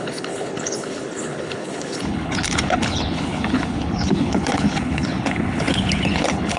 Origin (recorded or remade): remade